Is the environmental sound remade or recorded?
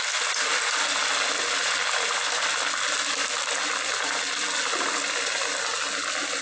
recorded